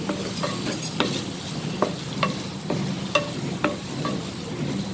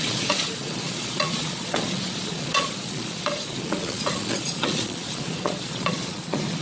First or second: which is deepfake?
second